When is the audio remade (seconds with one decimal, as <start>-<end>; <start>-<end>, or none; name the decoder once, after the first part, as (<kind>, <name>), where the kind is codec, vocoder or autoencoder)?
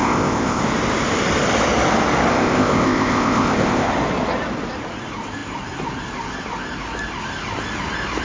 0.0-0.6 (codec, ZipCodec); 2.3-3.9